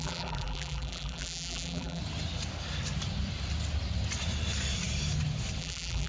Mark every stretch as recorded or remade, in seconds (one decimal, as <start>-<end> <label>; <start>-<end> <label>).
0.0-2.0 remade; 2.0-5.6 recorded; 5.6-6.1 remade